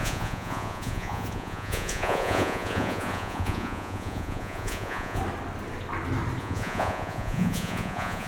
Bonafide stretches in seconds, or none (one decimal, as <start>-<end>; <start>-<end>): 5.2-6.4